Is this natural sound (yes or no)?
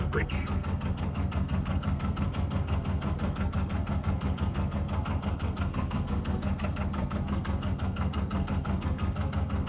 no